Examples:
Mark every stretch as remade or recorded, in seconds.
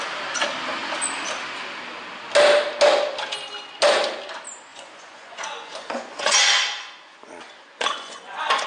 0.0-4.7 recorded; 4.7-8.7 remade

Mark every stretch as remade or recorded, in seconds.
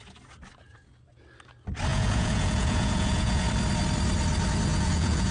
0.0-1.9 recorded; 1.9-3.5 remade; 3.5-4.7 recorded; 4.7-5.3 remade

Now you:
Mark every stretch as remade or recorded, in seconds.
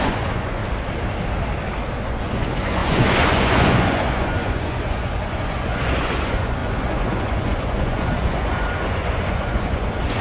0.0-0.6 remade; 0.6-2.0 recorded; 2.0-10.2 remade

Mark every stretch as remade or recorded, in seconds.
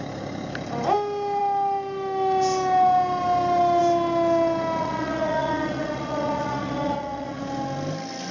0.0-4.8 recorded; 4.8-7.4 remade; 7.4-8.3 recorded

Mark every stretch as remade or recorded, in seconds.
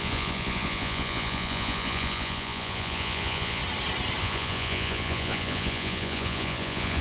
0.0-3.6 remade; 3.6-4.2 recorded; 4.2-7.0 remade